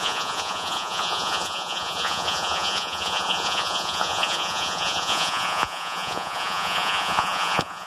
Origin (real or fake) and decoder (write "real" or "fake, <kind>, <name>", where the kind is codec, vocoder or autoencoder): fake, vocoder, Vocos